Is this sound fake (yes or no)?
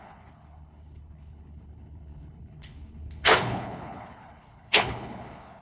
yes